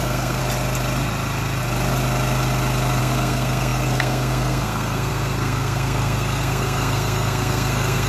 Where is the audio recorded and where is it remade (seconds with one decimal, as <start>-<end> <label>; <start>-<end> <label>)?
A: 0.0-0.4 remade; 0.4-3.0 recorded; 3.0-8.1 remade